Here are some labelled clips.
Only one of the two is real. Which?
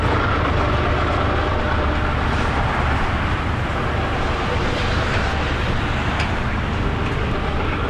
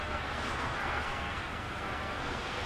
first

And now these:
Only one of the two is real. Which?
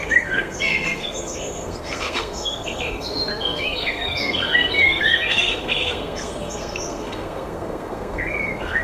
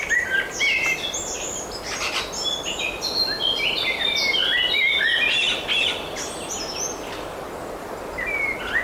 second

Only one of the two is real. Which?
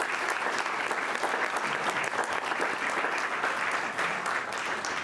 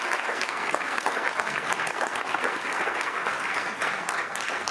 first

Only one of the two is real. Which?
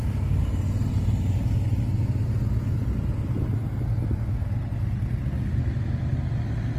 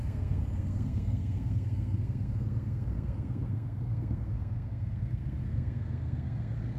first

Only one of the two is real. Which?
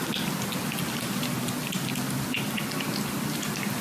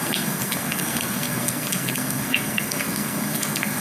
first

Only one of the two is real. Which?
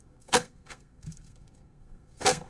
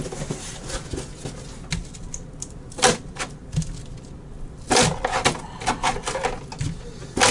second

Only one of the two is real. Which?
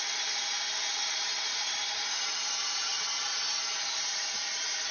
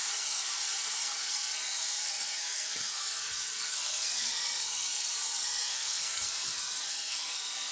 first